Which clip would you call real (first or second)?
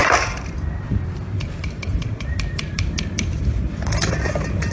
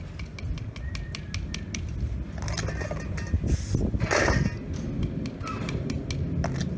second